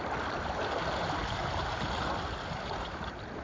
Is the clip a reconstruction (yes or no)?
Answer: no